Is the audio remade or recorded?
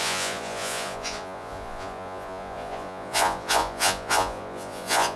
remade